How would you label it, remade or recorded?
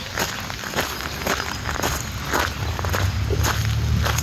recorded